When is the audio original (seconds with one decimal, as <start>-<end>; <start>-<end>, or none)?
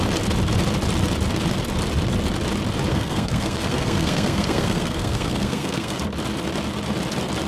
0.0-2.9; 6.0-7.5